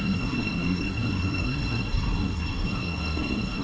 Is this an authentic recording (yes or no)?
no